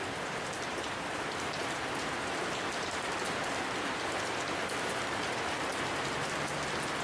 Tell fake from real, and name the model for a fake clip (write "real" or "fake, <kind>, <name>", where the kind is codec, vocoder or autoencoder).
real